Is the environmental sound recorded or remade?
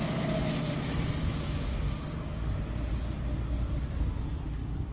recorded